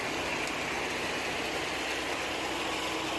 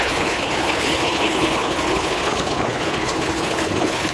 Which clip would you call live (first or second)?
first